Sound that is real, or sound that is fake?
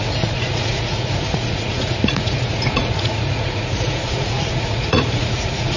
fake